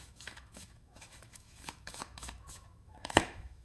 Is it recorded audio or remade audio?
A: remade